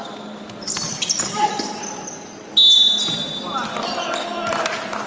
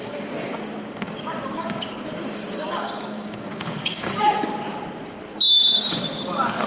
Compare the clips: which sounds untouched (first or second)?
first